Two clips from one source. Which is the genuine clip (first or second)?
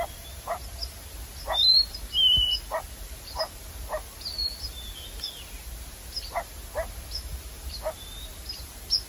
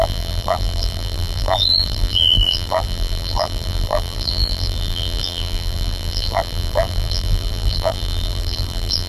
first